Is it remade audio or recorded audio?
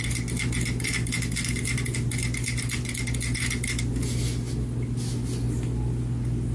recorded